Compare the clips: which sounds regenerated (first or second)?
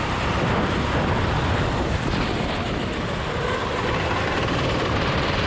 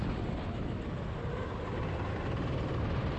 first